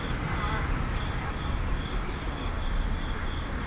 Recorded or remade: recorded